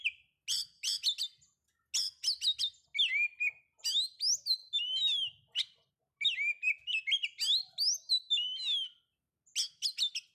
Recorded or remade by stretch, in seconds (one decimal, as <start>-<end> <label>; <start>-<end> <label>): 0.0-10.3 recorded